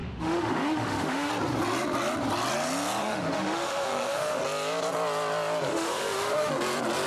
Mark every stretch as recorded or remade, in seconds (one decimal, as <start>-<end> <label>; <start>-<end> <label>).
0.0-1.3 remade; 1.3-3.0 recorded; 3.0-4.4 remade; 4.4-5.7 recorded; 5.7-6.5 remade; 6.5-7.1 recorded